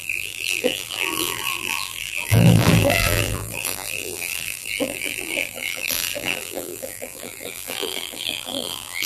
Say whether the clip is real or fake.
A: fake